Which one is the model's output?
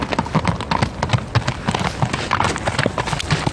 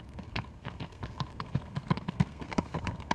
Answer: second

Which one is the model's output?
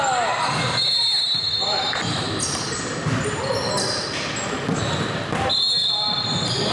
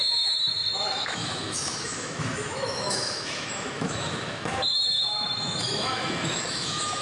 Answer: second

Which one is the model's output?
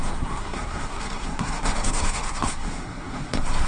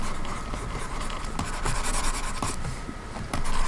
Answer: first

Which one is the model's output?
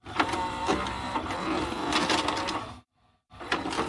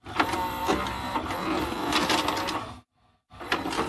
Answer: first